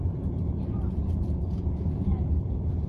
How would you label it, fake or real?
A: fake